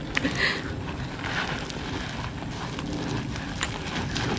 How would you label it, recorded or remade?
recorded